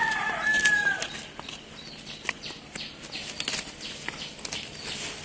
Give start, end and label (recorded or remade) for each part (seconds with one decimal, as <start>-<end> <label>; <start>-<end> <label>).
0.0-5.2 recorded

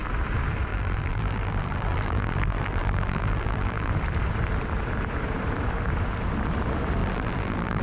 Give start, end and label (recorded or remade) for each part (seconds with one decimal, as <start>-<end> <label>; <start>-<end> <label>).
0.0-0.7 recorded; 0.7-3.9 remade; 3.9-7.0 recorded; 7.0-7.8 remade

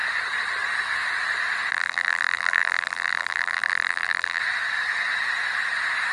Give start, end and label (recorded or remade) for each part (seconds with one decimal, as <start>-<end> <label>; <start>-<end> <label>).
0.0-1.7 recorded; 1.7-4.4 remade; 4.4-6.1 recorded

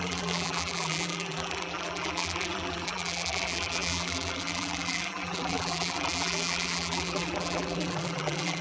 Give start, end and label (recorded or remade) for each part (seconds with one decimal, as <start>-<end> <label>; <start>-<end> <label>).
0.0-8.6 remade

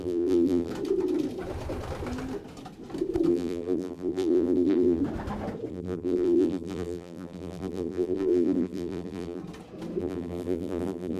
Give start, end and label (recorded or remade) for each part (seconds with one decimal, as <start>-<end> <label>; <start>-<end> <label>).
0.0-0.7 remade; 0.7-3.3 recorded; 3.3-5.0 remade; 5.0-5.7 recorded; 5.7-9.4 remade; 9.4-10.0 recorded; 10.0-11.2 remade

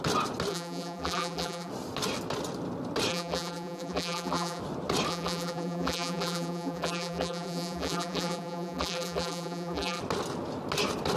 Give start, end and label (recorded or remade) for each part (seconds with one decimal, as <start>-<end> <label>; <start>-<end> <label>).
0.0-0.5 recorded; 0.5-1.7 remade; 1.7-3.1 recorded; 3.1-4.6 remade; 4.6-5.1 recorded; 5.1-10.0 remade; 10.0-11.2 recorded